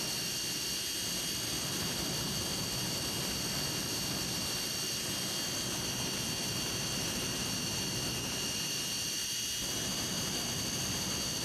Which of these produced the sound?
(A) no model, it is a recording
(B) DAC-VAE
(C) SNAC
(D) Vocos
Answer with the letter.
A